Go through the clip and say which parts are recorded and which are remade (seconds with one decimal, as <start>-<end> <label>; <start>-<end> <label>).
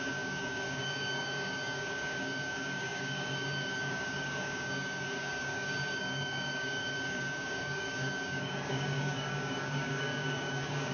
0.0-10.9 remade